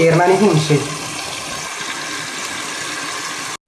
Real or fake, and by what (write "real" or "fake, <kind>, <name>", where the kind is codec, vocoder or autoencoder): real